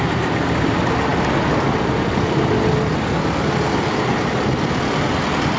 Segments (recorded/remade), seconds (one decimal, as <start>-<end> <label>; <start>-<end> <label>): 0.0-5.6 recorded